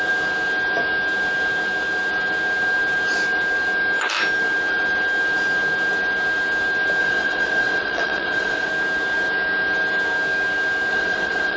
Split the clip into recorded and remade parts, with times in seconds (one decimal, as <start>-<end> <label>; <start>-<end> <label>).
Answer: 0.0-7.0 recorded; 7.0-8.7 remade; 8.7-10.9 recorded; 10.9-11.6 remade